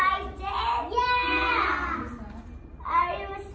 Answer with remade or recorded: recorded